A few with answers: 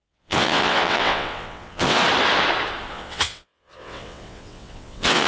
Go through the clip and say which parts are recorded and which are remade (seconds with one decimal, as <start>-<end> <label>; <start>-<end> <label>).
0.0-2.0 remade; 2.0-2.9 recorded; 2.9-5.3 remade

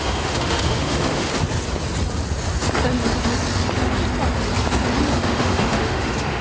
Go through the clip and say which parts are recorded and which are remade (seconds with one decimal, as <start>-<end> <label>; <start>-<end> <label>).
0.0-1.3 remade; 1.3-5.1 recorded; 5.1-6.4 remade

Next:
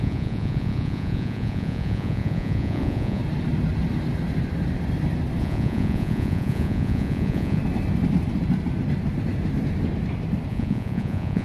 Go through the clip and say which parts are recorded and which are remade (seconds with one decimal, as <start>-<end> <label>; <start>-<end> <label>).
0.0-3.2 remade; 3.2-5.4 recorded; 5.4-7.6 remade; 7.6-10.5 recorded; 10.5-11.4 remade

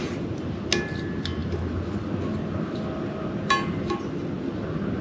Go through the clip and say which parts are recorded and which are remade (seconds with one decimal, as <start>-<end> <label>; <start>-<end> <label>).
0.0-5.0 recorded